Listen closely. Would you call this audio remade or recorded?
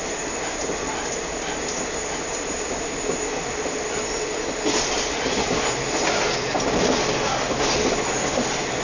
recorded